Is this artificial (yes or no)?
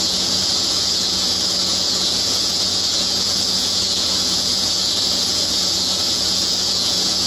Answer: yes